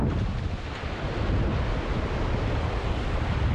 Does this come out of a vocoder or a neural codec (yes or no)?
no